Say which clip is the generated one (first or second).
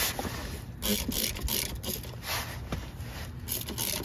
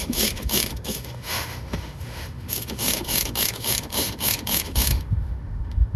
second